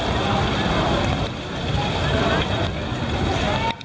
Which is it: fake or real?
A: real